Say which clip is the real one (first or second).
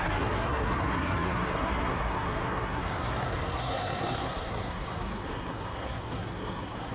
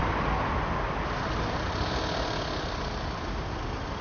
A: second